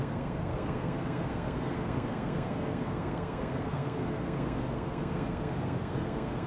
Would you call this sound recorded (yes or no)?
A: no